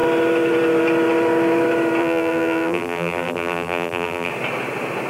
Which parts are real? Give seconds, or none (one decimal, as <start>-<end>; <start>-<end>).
0.0-2.0; 4.3-5.1